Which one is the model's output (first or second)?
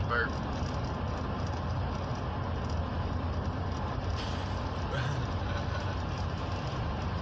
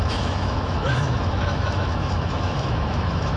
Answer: second